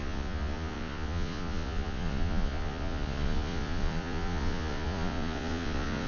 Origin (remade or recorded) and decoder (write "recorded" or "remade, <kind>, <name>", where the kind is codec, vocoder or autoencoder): remade, vocoder, Vocos